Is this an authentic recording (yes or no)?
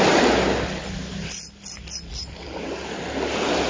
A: yes